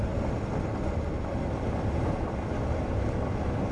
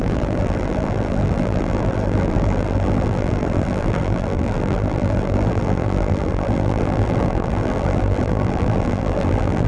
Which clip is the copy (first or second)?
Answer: second